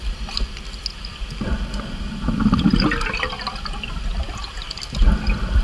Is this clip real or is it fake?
real